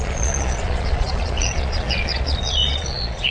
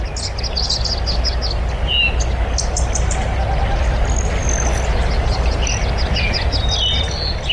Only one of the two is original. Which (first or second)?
second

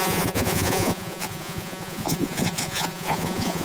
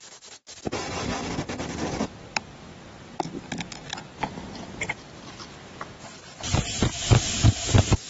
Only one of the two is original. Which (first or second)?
second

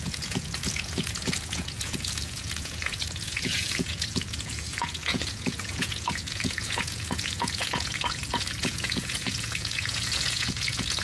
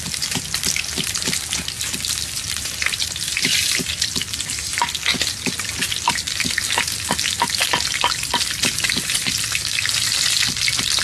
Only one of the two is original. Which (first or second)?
second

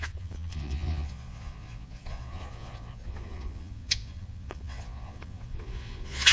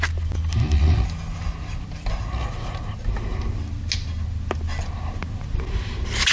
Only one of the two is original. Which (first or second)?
second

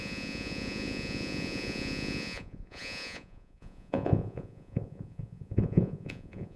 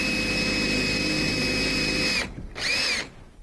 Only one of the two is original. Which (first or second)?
second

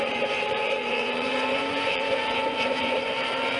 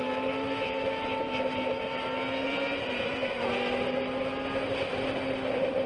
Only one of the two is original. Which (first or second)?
second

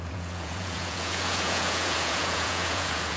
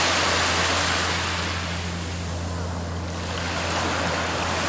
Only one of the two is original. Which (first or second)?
second